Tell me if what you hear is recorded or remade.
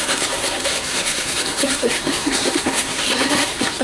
remade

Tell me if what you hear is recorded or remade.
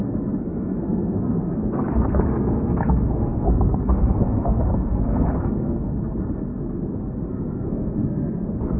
remade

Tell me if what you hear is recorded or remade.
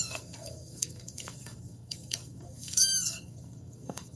remade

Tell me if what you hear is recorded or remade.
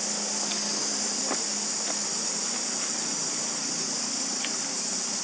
recorded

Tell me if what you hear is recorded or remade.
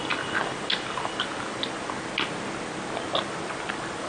recorded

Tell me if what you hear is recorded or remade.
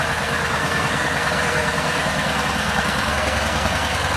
remade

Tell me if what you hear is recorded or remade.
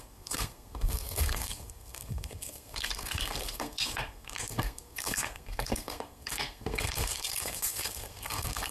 remade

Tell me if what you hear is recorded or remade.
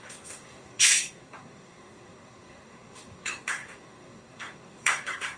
remade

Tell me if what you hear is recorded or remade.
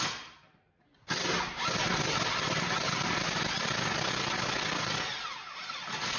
recorded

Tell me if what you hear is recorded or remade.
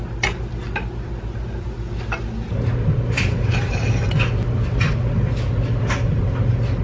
recorded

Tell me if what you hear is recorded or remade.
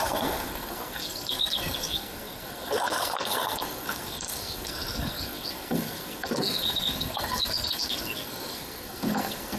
remade